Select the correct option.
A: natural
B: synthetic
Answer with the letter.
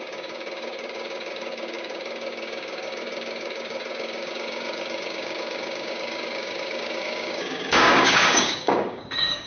B